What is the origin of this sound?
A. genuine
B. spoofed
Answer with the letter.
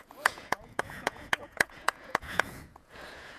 B